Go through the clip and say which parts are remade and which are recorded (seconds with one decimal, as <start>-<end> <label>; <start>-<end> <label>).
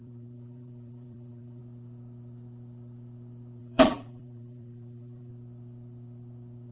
0.0-1.6 remade; 1.6-3.6 recorded; 3.6-5.3 remade; 5.3-6.7 recorded